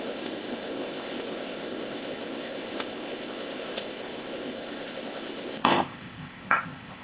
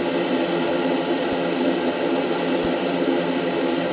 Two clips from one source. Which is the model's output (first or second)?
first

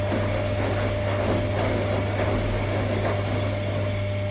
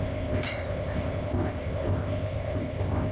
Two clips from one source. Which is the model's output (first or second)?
second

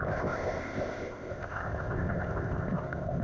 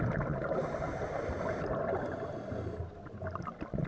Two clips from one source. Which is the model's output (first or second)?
first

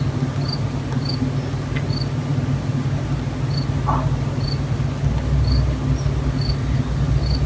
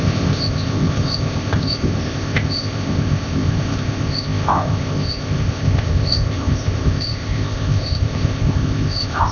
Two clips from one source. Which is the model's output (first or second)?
second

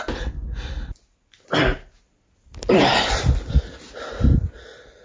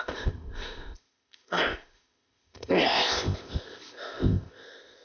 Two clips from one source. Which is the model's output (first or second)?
second